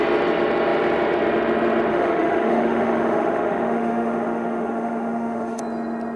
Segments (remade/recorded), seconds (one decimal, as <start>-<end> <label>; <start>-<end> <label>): 0.0-1.9 recorded; 1.9-5.6 remade; 5.6-6.2 recorded